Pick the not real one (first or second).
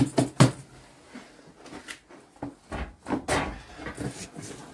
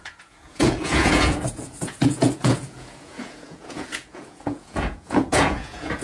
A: second